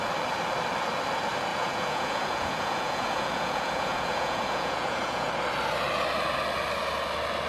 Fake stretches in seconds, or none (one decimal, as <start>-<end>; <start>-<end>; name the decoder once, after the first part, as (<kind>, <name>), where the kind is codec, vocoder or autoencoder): 1.5-5.3 (vocoder, Vocos)